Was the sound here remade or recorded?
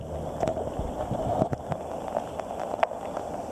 recorded